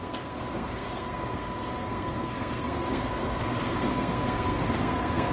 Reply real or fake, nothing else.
fake